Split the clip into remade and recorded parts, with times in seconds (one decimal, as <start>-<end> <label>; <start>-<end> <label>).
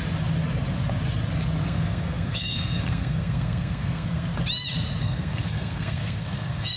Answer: 0.0-1.6 recorded; 1.6-4.4 remade; 4.4-5.0 recorded; 5.0-6.8 remade